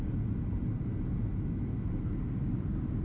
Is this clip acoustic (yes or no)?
yes